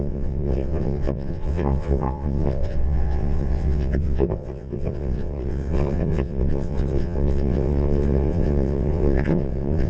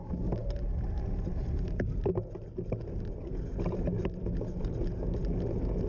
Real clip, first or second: second